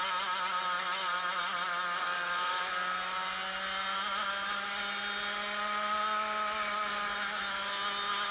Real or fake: real